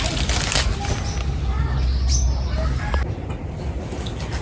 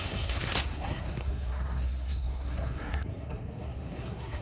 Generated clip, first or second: second